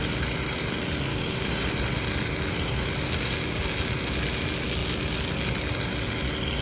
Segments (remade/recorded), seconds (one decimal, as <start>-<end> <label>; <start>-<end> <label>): 0.0-1.1 recorded; 1.1-1.7 remade; 1.7-6.6 recorded